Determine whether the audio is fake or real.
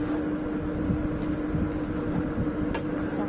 real